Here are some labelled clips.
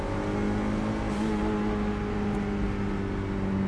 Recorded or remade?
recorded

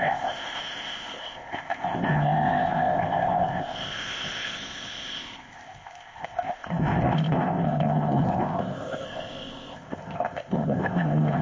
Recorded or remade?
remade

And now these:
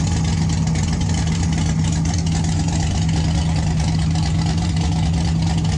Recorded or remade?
recorded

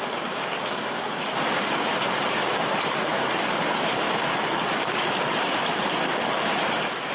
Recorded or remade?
recorded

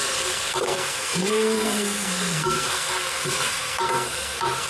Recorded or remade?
remade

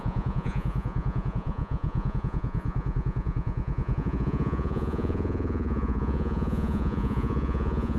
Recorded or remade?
remade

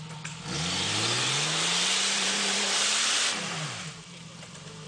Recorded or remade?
remade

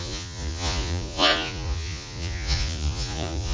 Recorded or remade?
remade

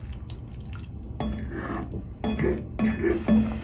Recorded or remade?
recorded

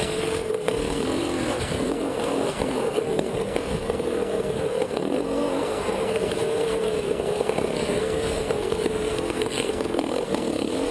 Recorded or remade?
remade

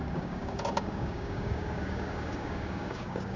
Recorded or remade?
remade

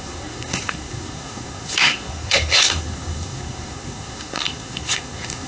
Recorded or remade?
remade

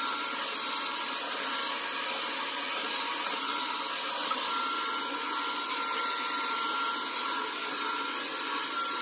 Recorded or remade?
recorded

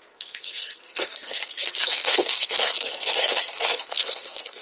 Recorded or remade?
remade